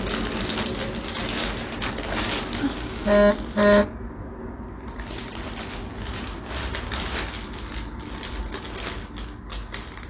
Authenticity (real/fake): real